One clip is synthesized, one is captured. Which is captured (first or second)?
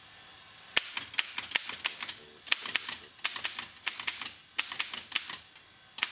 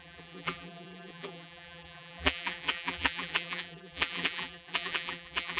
first